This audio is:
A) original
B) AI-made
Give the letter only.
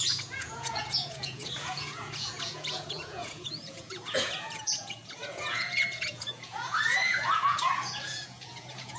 B